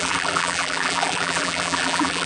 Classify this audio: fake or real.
fake